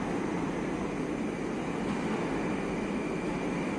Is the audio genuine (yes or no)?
yes